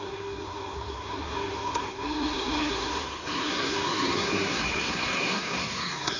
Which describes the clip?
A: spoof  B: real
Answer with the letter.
A